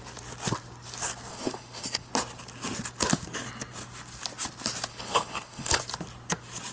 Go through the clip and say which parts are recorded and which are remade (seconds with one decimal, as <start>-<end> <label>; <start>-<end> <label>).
0.0-1.3 recorded; 1.3-2.1 remade; 2.1-4.9 recorded; 4.9-5.8 remade; 5.8-6.7 recorded